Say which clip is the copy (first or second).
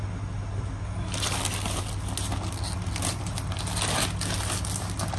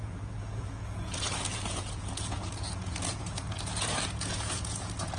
second